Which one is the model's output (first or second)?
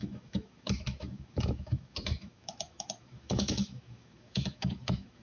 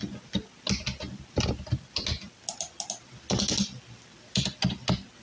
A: first